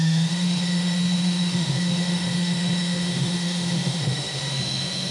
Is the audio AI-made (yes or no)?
yes